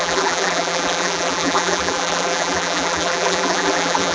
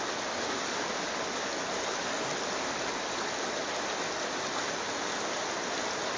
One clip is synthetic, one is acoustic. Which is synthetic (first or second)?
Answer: first